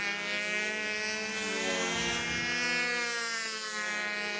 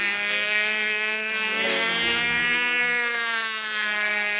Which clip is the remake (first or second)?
second